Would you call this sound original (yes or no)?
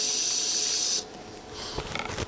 yes